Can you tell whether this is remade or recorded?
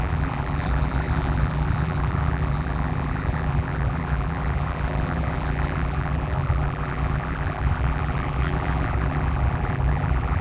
remade